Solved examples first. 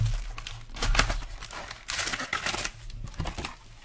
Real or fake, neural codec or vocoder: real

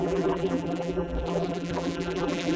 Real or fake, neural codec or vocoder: fake, vocoder, BigVGAN v2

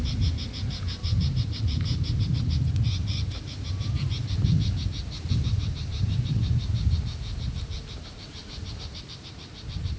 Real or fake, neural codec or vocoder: fake, vocoder, BigVGAN v2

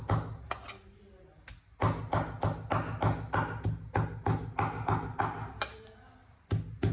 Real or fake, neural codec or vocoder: real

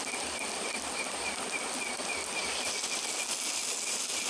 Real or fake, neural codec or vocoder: real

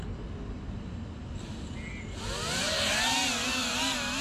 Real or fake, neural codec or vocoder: real